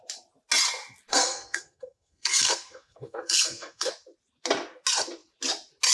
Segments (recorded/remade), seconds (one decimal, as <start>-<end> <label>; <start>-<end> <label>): 0.0-1.1 recorded; 1.1-3.9 remade; 3.9-5.9 recorded